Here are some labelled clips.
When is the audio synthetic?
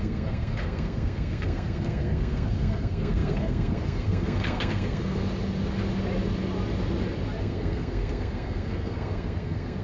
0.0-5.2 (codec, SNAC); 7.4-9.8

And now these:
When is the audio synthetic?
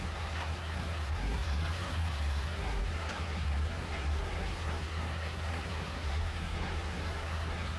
0.0-7.8 (codec, SNAC)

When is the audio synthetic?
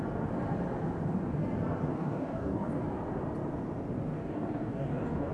1.9-2.8 (codec, DAC); 4.2-5.3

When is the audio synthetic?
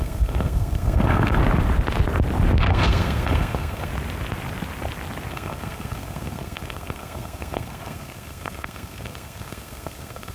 0.0-1.4 (codec, SNAC); 2.6-3.9; 5.3-10.3